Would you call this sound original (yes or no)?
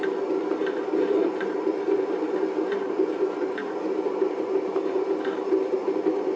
yes